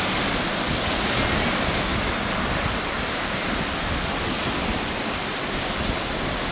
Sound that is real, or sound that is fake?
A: real